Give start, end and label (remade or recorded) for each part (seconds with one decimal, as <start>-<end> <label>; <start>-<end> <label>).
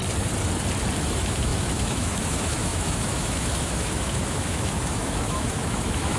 0.0-1.0 recorded; 1.0-6.2 remade